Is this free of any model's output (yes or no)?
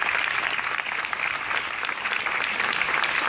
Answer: yes